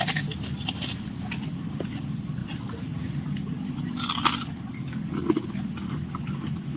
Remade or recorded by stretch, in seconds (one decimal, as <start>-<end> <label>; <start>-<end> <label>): 0.0-6.8 recorded